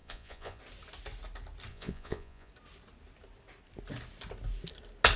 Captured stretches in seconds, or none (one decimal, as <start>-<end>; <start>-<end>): 0.6-1.7; 2.5-5.2